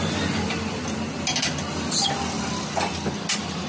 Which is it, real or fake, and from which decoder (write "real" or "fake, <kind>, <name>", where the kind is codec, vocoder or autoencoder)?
real